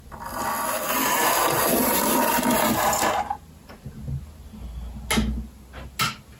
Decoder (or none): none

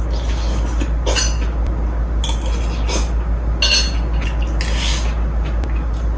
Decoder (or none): none